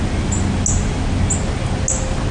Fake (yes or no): no